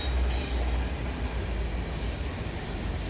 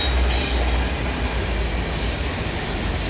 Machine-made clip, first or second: first